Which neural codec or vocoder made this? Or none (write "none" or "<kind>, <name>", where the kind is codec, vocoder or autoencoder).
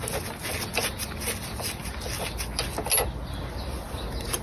none